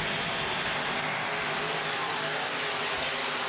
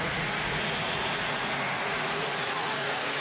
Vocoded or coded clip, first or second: second